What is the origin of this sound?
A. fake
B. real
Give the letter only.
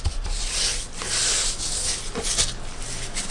B